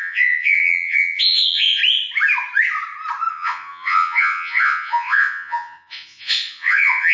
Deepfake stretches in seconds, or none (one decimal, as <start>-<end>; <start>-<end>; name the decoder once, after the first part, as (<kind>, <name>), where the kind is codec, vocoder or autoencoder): 0.0-1.8 (vocoder, Vocos); 3.3-7.1